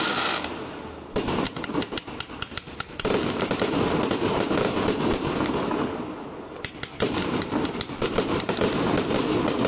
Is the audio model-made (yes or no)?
no